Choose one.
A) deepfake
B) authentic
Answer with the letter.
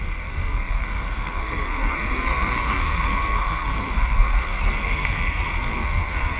A